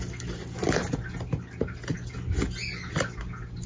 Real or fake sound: real